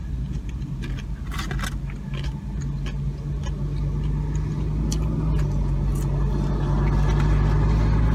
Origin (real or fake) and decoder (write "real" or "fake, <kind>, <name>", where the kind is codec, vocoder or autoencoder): real